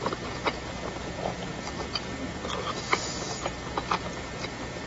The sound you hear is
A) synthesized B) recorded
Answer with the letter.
B